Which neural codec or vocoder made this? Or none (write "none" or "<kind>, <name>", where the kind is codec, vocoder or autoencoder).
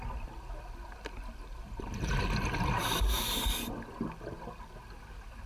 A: none